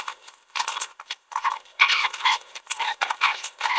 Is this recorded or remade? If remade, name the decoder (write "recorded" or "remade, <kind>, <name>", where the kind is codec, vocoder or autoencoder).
remade, codec, ZipCodec